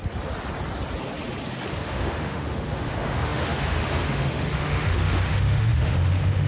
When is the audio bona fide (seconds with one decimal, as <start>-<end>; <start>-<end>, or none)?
0.0-1.8